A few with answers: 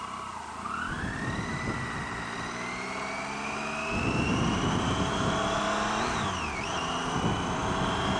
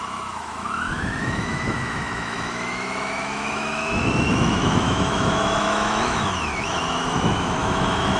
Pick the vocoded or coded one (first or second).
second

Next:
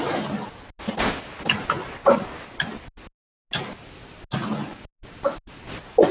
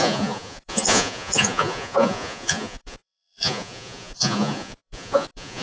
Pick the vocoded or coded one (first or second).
second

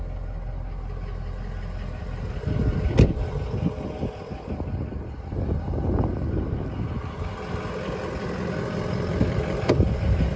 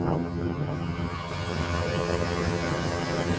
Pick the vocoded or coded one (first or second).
second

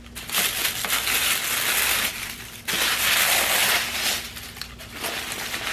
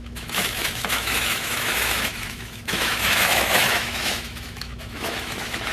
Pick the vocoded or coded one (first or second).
second